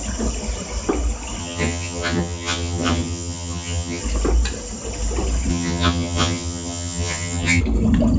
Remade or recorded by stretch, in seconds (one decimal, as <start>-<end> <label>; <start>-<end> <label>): 0.0-1.4 recorded; 1.4-4.0 remade; 4.0-5.5 recorded; 5.5-7.6 remade; 7.6-8.2 recorded